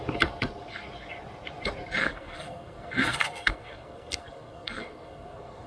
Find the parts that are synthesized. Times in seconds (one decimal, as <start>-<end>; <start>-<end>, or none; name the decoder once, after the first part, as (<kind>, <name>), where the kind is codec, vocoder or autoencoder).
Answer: 2.0-5.7 (codec, SNAC)